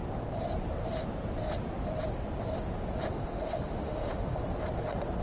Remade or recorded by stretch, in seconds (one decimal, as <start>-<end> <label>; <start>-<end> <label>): 0.0-3.1 recorded; 3.1-4.4 remade; 4.4-5.2 recorded